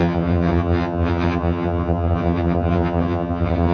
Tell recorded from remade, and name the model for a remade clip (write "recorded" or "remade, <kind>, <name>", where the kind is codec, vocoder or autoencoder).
remade, vocoder, HiFi-GAN